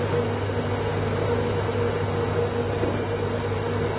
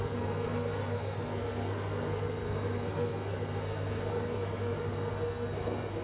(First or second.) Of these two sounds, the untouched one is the first